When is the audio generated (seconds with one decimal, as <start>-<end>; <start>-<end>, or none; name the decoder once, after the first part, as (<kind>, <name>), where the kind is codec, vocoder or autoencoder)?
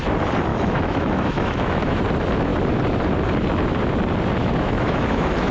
0.5-2.0 (autoencoder, DAC-VAE); 4.4-5.5